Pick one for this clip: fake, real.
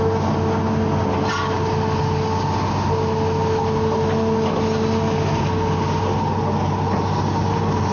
real